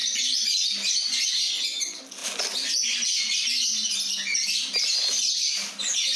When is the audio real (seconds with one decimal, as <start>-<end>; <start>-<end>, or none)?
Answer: 0.5-6.2